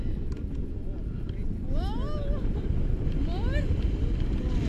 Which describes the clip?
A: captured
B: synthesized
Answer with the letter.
A